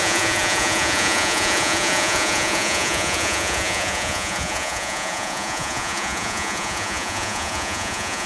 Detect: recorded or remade remade